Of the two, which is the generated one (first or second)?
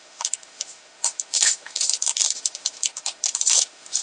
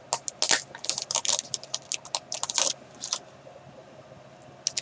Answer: first